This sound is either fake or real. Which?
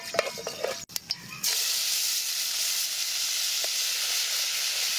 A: real